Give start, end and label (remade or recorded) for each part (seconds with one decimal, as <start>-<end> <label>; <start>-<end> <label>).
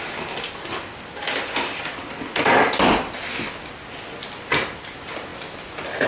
0.0-6.1 recorded